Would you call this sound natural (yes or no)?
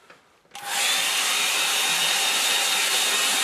yes